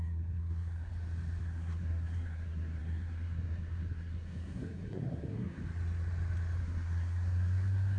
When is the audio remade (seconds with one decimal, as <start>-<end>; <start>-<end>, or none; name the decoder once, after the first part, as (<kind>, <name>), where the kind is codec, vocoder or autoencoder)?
0.0-0.9 (codec, SNAC); 1.4-5.6; 6.6-8.0